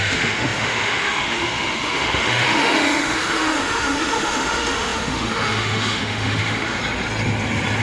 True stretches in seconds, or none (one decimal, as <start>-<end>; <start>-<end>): 6.8-7.8